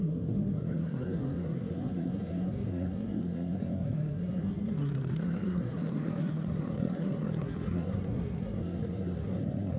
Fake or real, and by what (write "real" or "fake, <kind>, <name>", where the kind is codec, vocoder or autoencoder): fake, codec, SNAC